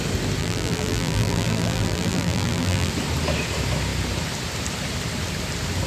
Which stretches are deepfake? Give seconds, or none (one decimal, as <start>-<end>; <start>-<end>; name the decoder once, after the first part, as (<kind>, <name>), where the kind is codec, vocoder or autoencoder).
0.4-2.9 (vocoder, BigVGAN v2)